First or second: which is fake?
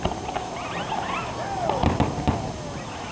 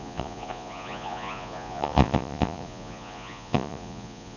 second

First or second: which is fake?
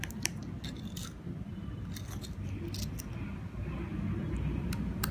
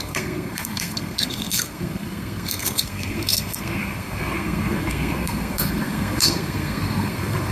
second